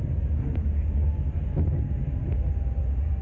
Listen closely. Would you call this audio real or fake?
real